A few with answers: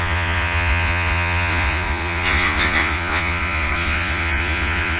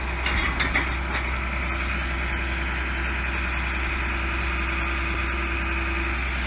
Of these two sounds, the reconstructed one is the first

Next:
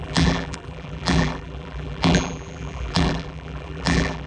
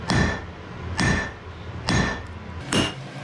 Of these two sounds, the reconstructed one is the first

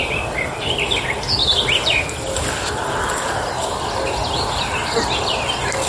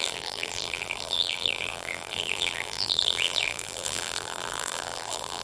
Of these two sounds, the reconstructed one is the second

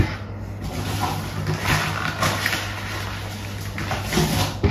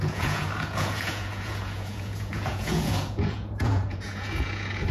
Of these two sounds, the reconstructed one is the second